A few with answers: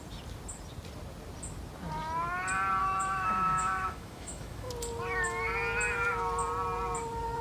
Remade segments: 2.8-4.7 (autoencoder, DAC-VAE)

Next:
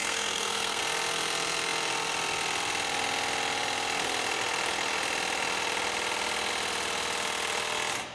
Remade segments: 0.0-0.8 (codec, SNAC)

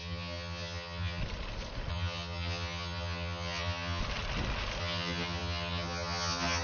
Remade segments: 0.0-1.2 (vocoder, HiFi-GAN); 1.9-4.0; 4.8-6.6

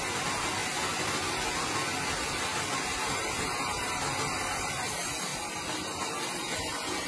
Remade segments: none

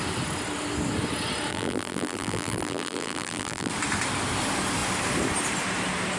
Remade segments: 1.5-3.7 (vocoder, BigVGAN v2)